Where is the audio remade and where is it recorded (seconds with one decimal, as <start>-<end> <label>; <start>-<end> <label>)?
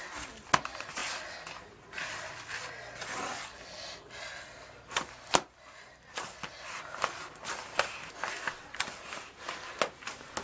0.0-10.4 recorded